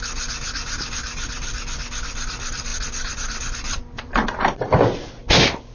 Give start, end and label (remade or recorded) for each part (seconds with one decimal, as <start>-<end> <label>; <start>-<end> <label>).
0.0-5.7 recorded